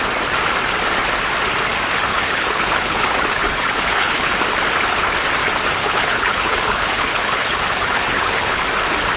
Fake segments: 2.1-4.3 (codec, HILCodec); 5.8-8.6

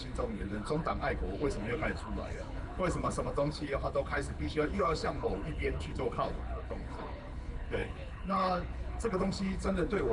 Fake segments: 0.0-10.1 (codec, HILCodec)

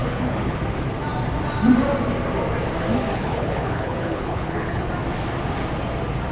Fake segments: 0.0-0.6 (codec, HILCodec); 3.1-4.9

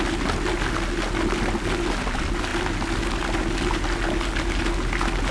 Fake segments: none

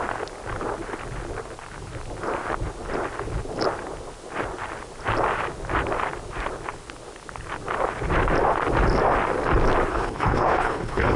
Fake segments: 9.9-11.2 (codec, HILCodec)

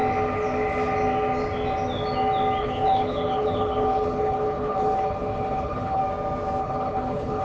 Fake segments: 2.6-6.0 (codec, HILCodec); 6.6-7.4

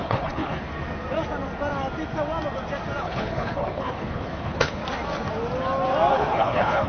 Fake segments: 0.0-0.7 (codec, HILCodec); 3.0-4.8; 6.1-6.9

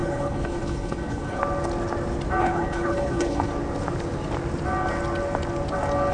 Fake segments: 0.0-1.4 (codec, HILCodec); 2.4-3.5